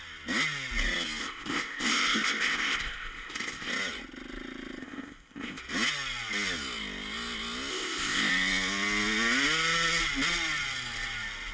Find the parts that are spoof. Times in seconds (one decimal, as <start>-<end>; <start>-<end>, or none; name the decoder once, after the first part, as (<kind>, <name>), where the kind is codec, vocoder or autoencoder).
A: 1.2-3.7 (codec, ZipCodec); 4.8-5.6; 7.7-8.3